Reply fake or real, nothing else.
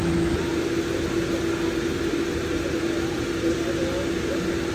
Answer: real